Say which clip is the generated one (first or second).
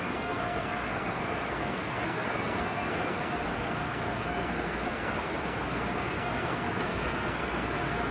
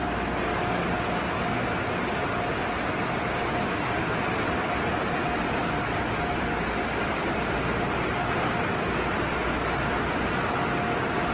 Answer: first